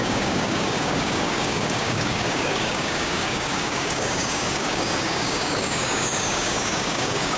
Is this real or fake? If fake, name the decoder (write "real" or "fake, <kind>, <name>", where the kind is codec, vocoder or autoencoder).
fake, codec, DAC